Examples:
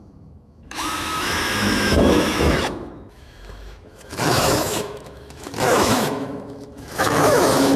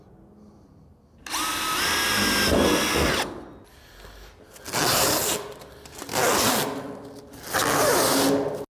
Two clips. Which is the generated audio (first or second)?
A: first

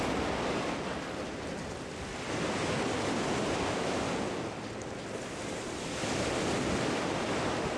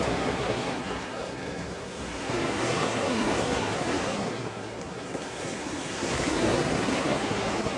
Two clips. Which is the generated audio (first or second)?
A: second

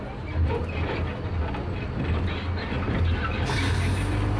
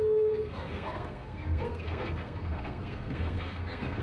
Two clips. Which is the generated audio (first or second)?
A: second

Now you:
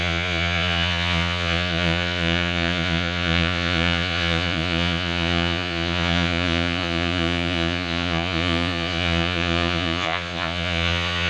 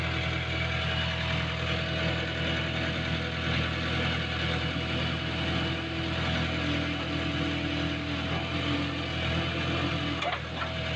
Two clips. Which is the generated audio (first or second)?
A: first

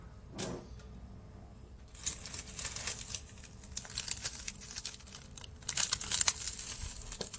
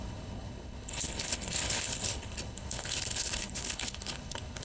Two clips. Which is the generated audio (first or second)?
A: second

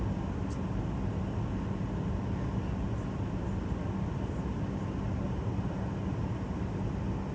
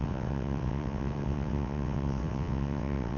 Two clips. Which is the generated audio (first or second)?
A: second